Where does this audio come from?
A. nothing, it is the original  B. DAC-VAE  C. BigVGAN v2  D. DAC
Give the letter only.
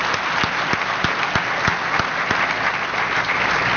A